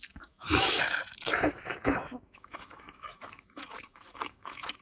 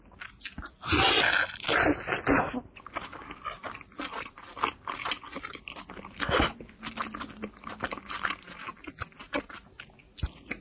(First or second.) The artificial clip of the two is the first